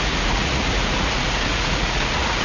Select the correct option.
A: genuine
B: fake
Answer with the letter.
B